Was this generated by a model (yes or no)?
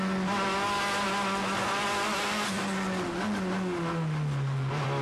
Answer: no